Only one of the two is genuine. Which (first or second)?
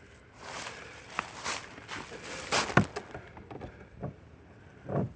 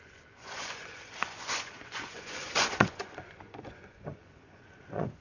first